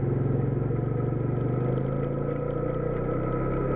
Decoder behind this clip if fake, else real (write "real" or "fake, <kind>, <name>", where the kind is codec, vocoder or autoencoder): real